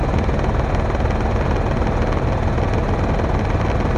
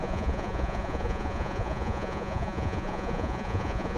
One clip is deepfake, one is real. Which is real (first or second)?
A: first